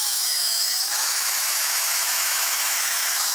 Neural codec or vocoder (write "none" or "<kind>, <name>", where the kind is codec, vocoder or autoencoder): autoencoder, DAC-VAE